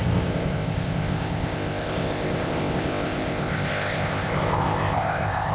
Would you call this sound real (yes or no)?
no